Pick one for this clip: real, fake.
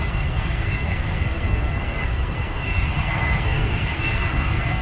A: fake